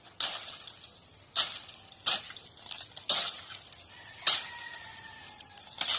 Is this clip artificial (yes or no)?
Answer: no